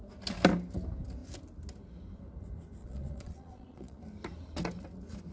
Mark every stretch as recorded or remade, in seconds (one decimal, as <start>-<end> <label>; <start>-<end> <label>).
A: 0.0-2.8 recorded; 2.8-4.0 remade; 4.0-5.3 recorded